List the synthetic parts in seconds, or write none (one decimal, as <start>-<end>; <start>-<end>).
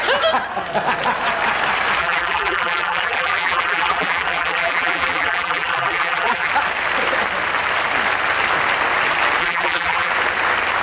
2.0-6.5; 9.4-10.1